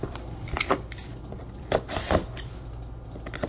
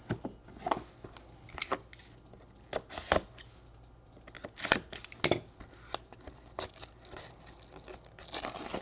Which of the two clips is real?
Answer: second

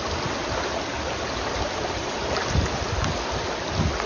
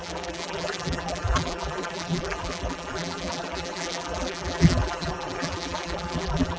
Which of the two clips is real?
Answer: first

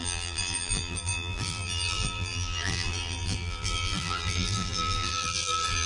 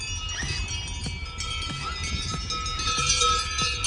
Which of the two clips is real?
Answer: second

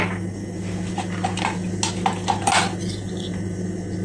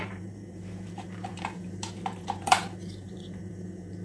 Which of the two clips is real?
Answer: first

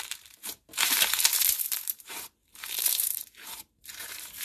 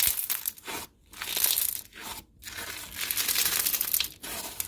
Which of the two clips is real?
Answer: second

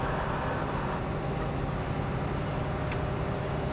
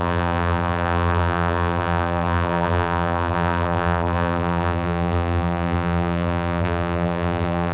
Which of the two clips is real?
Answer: first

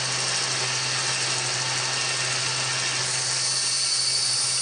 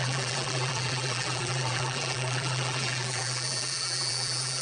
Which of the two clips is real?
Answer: first